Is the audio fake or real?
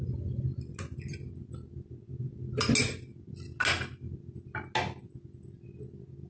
real